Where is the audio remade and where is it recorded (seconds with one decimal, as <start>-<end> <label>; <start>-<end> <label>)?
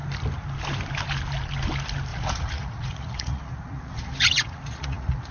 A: 0.0-2.1 recorded; 2.1-5.3 remade